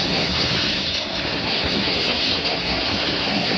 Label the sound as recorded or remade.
remade